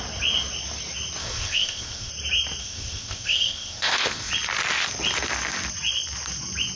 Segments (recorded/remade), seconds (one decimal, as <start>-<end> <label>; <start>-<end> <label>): 0.0-1.2 recorded; 1.2-2.1 remade; 2.1-2.6 recorded; 2.6-4.3 remade; 4.3-6.8 recorded